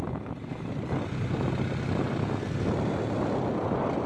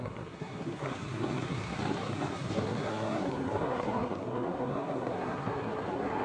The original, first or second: first